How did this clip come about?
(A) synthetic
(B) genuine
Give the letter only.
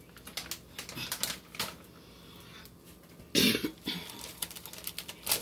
B